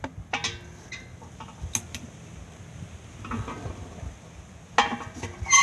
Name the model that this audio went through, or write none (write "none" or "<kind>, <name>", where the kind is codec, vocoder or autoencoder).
none